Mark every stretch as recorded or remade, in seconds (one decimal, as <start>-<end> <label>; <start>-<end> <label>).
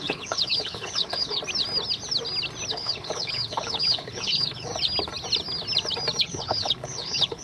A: 0.0-1.4 remade; 1.4-2.7 recorded; 2.7-4.7 remade; 4.7-6.2 recorded; 6.2-7.4 remade